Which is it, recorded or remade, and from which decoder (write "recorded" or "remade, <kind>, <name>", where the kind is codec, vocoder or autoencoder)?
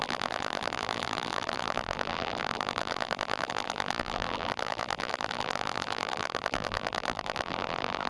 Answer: remade, vocoder, BigVGAN v2